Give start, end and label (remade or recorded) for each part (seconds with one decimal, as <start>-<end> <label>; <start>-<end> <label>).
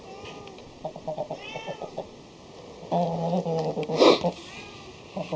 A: 0.0-0.6 recorded; 0.6-2.2 remade; 2.2-5.4 recorded